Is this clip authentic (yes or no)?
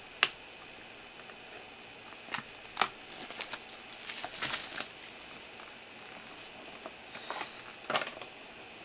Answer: yes